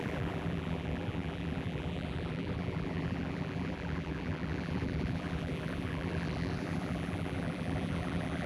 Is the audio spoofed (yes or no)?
yes